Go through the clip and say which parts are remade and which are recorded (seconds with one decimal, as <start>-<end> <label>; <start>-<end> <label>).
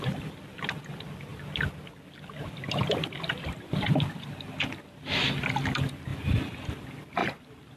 0.0-7.8 recorded